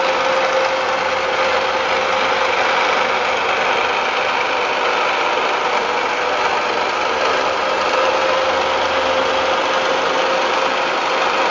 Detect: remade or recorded recorded